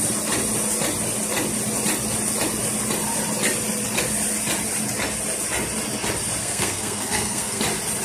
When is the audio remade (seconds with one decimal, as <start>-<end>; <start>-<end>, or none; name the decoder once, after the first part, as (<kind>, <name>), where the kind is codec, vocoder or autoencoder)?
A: 6.4-7.6 (codec, SNAC)

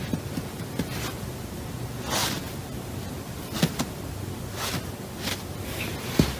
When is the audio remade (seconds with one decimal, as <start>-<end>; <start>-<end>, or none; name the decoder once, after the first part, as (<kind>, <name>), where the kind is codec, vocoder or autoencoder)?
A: none